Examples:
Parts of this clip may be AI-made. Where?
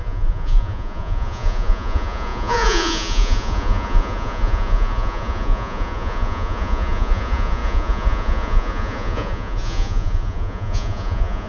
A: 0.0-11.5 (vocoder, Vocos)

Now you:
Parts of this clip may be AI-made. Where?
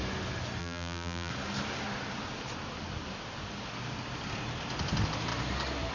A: 0.6-1.3 (vocoder, BigVGAN v2)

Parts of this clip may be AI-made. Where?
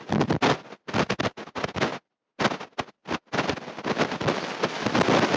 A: none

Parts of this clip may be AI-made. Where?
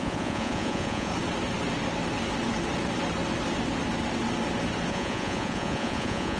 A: 0.0-1.1 (vocoder, Vocos); 4.9-6.4